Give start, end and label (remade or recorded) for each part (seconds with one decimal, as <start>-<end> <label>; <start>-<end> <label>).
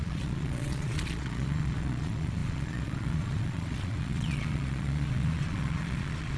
0.0-6.4 remade